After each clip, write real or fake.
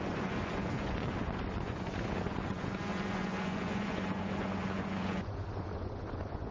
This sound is fake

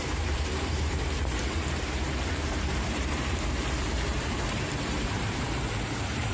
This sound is fake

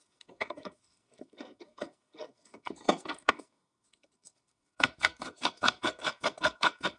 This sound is fake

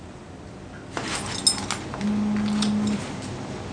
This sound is real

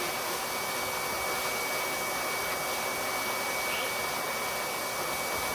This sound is real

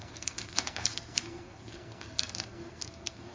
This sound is fake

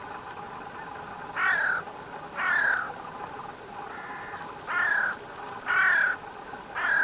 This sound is real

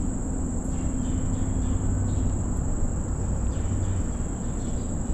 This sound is real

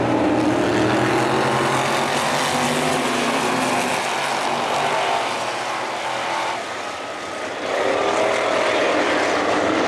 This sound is real